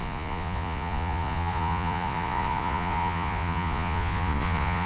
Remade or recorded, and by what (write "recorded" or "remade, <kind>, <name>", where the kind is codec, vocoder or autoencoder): remade, vocoder, Vocos